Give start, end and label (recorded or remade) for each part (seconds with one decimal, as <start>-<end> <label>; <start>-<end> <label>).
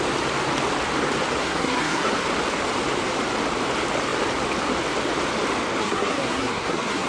0.0-1.4 recorded; 1.4-2.1 remade; 2.1-5.8 recorded; 5.8-7.1 remade